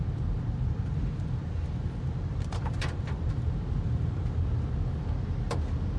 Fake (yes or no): no